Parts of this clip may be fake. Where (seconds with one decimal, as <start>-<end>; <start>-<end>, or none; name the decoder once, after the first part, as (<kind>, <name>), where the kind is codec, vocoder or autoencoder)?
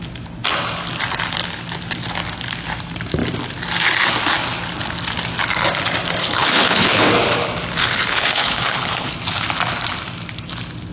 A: 6.2-7.1 (codec, HILCodec); 7.8-9.1